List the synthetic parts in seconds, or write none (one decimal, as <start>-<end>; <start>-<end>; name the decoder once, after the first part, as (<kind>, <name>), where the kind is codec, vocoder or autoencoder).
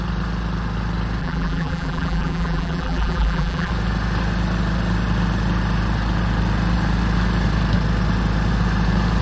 1.2-3.7 (vocoder, BigVGAN v2)